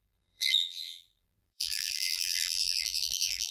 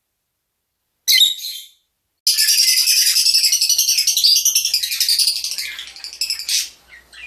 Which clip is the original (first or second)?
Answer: second